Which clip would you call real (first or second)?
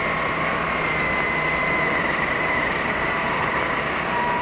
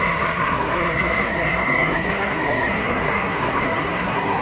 first